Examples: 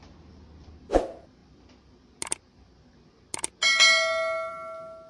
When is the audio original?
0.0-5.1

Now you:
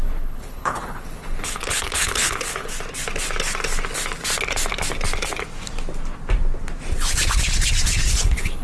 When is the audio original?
2.7-7.9

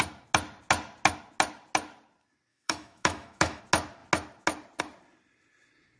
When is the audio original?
0.0-2.5; 3.6-6.0

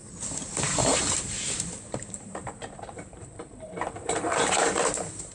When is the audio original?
none

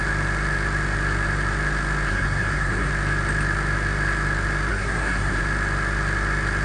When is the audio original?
0.0-2.1; 2.9-4.7; 5.4-6.6

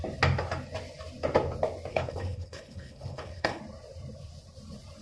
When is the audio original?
0.0-1.9; 3.6-5.0

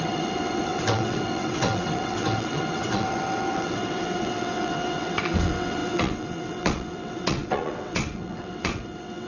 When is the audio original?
none

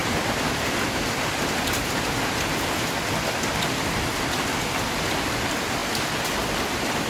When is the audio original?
5.8-7.1